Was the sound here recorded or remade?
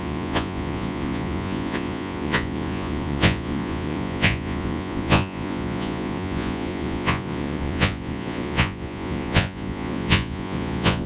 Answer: remade